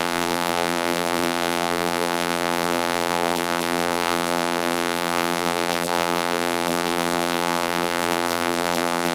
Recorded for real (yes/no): no